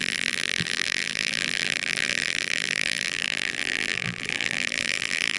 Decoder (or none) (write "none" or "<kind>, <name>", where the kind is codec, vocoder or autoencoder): vocoder, BigVGAN v2